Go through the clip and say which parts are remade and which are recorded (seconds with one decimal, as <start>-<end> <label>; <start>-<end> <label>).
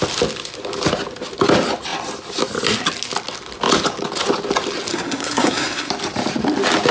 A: 0.0-4.9 recorded; 4.9-5.9 remade; 5.9-6.9 recorded